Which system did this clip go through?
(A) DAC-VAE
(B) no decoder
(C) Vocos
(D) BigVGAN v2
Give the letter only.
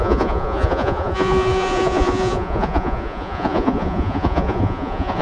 C